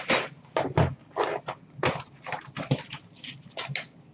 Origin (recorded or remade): recorded